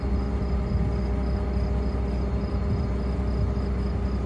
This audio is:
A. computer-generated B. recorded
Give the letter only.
B